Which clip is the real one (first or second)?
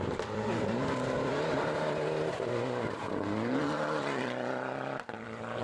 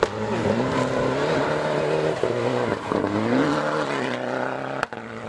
second